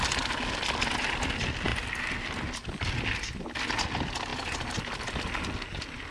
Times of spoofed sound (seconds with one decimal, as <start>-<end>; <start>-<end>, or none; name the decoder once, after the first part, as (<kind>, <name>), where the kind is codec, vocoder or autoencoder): none